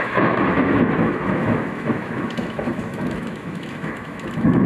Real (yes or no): no